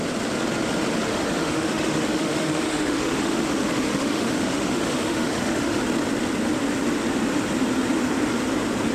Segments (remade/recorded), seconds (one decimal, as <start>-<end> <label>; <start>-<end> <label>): 0.0-1.1 recorded; 1.1-5.8 remade; 5.8-8.9 recorded